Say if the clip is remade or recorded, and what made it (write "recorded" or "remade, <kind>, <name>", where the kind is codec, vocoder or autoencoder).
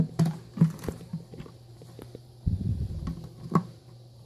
remade, vocoder, BigVGAN v2